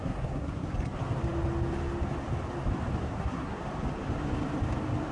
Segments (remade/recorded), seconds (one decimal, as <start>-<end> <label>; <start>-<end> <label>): 0.0-0.7 remade; 0.7-3.0 recorded; 3.0-3.6 remade; 3.6-5.1 recorded